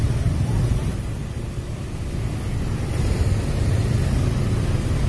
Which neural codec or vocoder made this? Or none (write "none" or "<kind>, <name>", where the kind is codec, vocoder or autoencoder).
none